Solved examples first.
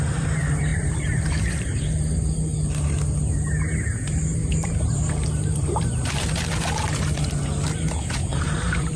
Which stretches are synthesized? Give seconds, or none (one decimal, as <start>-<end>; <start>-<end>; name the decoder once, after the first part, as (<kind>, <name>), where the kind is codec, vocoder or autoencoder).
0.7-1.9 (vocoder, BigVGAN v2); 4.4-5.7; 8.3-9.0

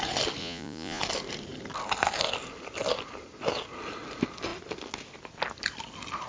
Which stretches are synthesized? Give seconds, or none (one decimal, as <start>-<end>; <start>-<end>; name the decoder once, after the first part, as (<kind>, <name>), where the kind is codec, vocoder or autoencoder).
0.4-1.0 (vocoder, Vocos)

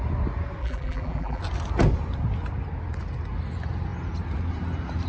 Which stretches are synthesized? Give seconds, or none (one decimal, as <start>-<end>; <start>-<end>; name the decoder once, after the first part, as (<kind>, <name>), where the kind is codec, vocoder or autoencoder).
0.6-1.4 (vocoder, BigVGAN v2)

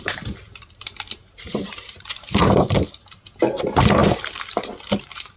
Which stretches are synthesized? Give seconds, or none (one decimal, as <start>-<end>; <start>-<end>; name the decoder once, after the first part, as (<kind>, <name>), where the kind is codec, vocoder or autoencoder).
0.0-2.4 (vocoder, BigVGAN v2); 3.6-4.0; 4.9-5.4